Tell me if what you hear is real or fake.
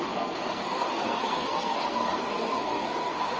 fake